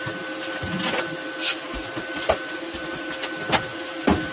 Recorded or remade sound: recorded